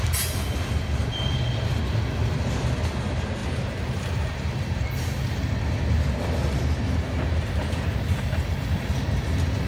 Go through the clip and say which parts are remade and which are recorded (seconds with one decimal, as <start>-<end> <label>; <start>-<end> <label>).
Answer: 0.0-3.4 recorded; 3.4-4.9 remade; 4.9-9.7 recorded